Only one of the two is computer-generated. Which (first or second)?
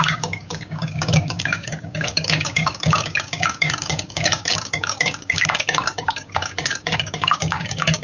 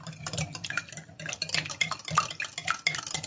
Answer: first